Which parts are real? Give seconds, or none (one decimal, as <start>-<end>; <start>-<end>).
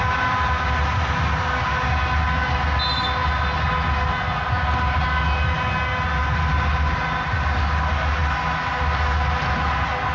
0.0-10.1